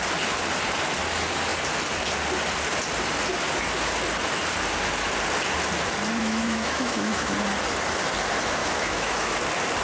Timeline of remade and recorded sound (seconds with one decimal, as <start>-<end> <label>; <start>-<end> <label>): 0.0-6.2 recorded; 6.2-7.3 remade; 7.3-8.6 recorded; 8.6-9.4 remade; 9.4-9.8 recorded